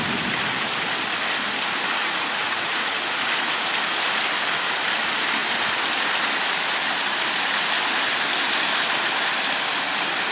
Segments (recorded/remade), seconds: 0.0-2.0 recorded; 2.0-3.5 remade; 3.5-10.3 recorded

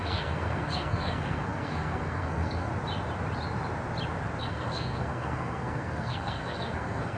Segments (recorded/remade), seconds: 0.0-2.7 remade; 2.7-4.4 recorded; 4.4-7.2 remade

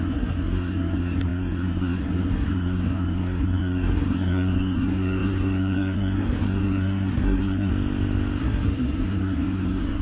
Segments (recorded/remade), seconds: 0.0-7.7 remade; 7.7-8.4 recorded; 8.4-10.0 remade

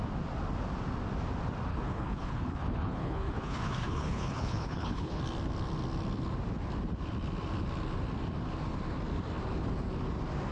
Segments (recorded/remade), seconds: 0.0-1.7 recorded; 1.7-5.2 remade; 5.2-10.5 recorded